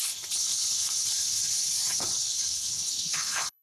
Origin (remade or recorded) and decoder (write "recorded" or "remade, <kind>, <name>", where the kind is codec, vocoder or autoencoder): remade, codec, HILCodec